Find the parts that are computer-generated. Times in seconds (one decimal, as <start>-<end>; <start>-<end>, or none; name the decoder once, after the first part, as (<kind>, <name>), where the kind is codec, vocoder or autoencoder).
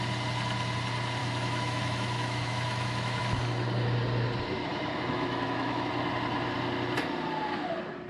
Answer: 1.2-3.2 (autoencoder, DAC-VAE); 4.7-5.9